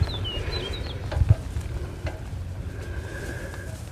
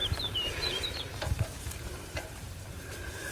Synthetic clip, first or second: second